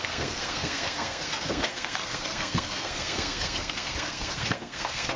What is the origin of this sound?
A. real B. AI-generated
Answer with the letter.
B